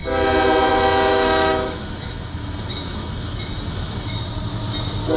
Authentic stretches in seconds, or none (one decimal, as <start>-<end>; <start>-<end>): 0.0-1.1; 4.2-5.2